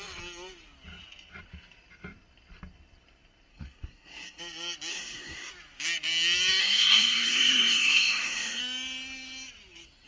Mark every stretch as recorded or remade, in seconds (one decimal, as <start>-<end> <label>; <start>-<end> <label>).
0.0-3.5 recorded; 3.5-4.4 remade; 4.4-4.9 recorded; 4.9-5.5 remade; 5.5-6.6 recorded; 6.6-8.6 remade; 8.6-10.1 recorded